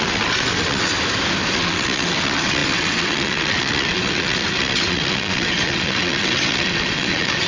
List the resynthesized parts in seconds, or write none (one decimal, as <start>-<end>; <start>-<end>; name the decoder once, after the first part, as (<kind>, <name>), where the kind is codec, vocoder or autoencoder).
0.0-0.9 (vocoder, WaveNeXt); 1.5-7.5